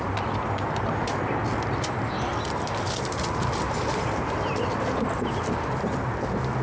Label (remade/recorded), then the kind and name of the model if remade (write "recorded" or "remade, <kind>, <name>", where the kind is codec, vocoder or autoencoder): recorded